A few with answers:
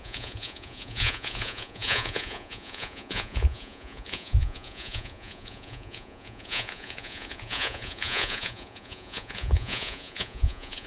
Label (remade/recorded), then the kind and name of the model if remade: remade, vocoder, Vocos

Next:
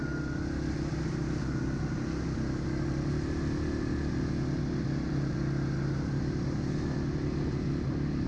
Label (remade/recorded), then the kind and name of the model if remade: recorded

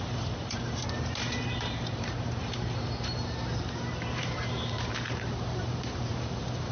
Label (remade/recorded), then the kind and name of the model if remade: remade, vocoder, BigVGAN v2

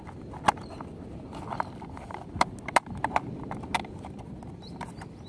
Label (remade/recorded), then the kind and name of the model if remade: recorded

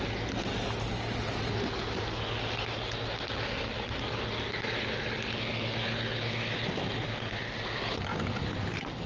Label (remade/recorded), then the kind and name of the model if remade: recorded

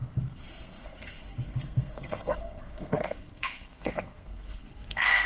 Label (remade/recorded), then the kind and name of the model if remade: remade, codec, SNAC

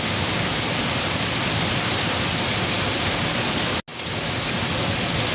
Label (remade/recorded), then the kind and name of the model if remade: recorded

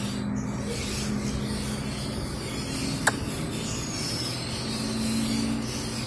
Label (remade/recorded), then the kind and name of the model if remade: recorded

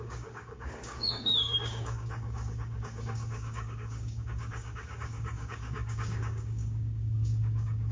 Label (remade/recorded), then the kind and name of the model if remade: remade, codec, DAC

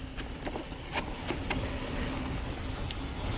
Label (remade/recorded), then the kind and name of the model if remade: recorded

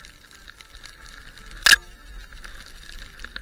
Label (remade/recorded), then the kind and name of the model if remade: recorded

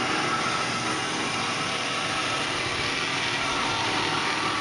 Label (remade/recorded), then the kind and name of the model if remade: recorded